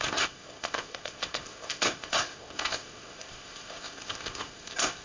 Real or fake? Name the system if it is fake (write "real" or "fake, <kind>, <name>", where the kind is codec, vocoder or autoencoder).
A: fake, codec, ZipCodec